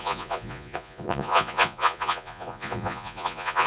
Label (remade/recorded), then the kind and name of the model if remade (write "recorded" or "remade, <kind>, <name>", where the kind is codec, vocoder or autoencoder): remade, vocoder, Vocos